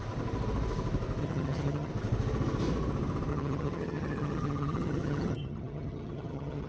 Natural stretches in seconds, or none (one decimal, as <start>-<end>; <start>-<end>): 0.0-1.2; 1.9-3.3